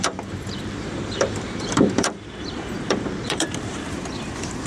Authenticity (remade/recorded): remade